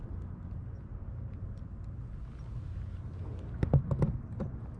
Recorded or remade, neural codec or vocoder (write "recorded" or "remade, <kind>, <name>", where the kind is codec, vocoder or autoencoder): recorded